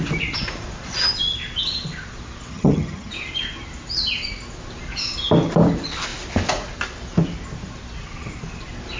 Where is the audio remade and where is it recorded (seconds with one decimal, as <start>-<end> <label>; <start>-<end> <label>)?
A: 0.0-2.5 recorded; 2.5-3.1 remade; 3.1-9.0 recorded